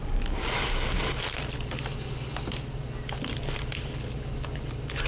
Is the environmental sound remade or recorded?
recorded